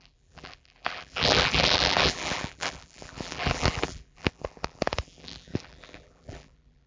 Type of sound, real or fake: fake